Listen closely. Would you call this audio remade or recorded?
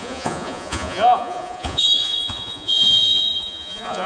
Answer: remade